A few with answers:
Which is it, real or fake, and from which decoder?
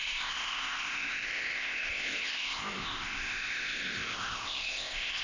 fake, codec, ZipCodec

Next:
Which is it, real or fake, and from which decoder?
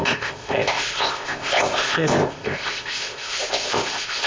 fake, codec, ZipCodec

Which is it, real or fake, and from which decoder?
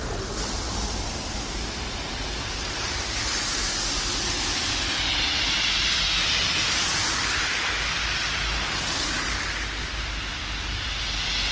real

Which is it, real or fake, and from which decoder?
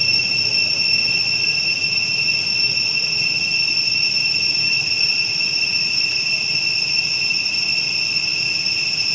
real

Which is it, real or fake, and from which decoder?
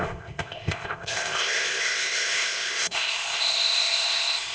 fake, codec, ZipCodec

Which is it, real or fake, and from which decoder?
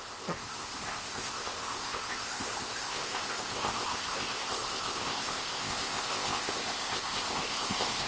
fake, codec, ZipCodec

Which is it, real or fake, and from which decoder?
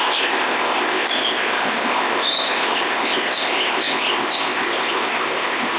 fake, codec, ZipCodec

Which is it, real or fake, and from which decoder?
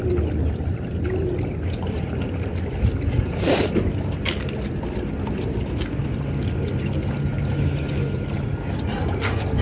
real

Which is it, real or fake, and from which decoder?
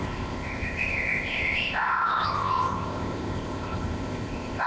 fake, codec, ZipCodec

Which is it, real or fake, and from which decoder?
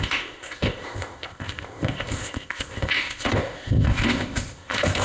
fake, codec, ZipCodec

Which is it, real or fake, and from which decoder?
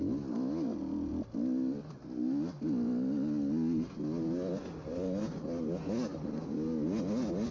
real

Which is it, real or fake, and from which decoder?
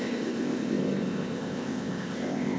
fake, codec, ZipCodec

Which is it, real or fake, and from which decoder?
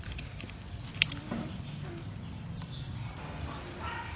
real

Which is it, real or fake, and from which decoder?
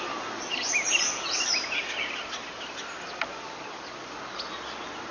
real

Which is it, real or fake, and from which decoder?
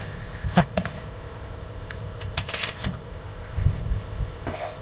fake, codec, ZipCodec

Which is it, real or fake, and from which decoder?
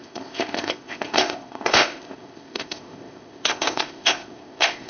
fake, codec, ZipCodec